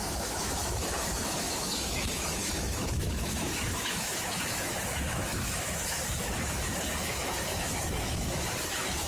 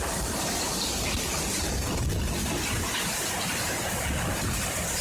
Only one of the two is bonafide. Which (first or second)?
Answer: second